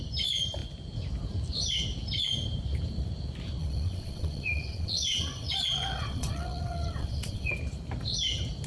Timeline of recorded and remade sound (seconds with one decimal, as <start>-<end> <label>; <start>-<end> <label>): 0.0-3.6 recorded; 3.6-7.5 remade; 7.5-8.7 recorded